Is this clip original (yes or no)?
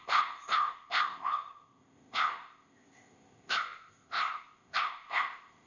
no